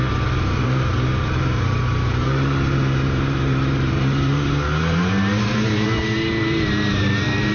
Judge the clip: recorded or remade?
remade